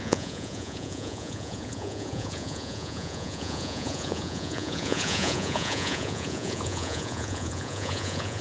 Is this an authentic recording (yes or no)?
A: no